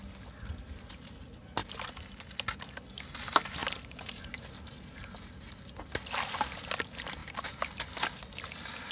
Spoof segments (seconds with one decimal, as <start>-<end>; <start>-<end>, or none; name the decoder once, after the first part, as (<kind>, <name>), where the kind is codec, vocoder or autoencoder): none